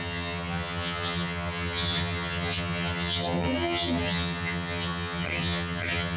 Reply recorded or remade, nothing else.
remade